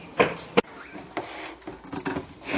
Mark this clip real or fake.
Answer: real